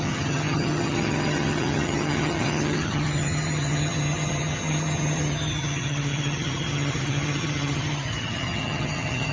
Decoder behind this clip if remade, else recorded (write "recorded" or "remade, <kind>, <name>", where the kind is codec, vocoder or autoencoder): remade, vocoder, HiFi-GAN